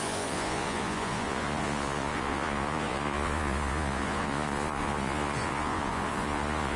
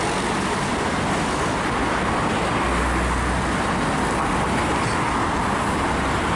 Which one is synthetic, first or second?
first